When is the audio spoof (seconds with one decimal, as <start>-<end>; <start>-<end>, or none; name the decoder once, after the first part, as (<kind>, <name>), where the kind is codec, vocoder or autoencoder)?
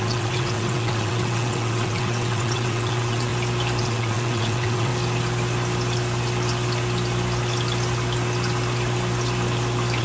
0.0-3.3 (vocoder, WaveNeXt); 3.8-4.9